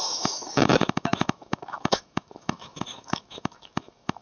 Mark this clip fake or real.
fake